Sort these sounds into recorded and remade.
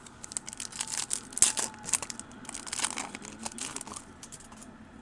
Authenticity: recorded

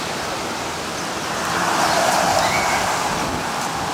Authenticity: remade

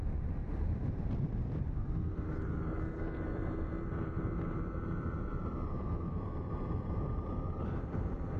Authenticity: remade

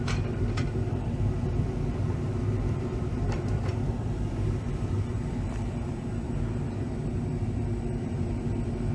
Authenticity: remade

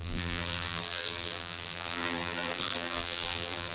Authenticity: remade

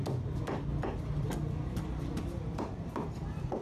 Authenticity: recorded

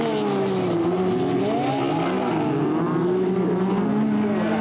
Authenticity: recorded